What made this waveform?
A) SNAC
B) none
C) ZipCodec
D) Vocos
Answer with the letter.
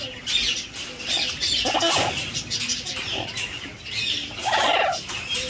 B